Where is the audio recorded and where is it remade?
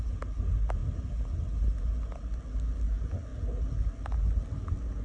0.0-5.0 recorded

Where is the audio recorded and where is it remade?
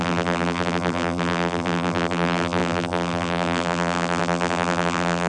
0.0-5.3 remade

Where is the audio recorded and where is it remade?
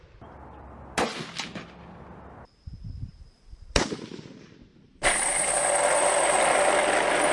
0.0-3.1 recorded; 3.1-4.1 remade; 4.1-4.7 recorded; 4.7-5.6 remade; 5.6-7.3 recorded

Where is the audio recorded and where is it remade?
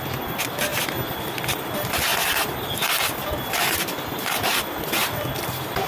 0.0-5.9 recorded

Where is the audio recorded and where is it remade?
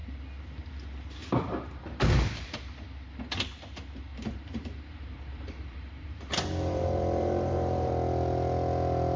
0.0-1.2 recorded; 1.2-2.3 remade; 2.3-4.1 recorded; 4.1-7.9 remade; 7.9-9.2 recorded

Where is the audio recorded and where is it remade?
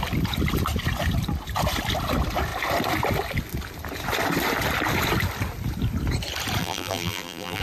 0.0-6.6 recorded; 6.6-7.6 remade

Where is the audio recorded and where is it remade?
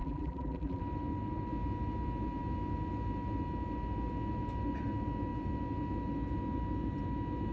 0.0-0.8 remade; 0.8-7.5 recorded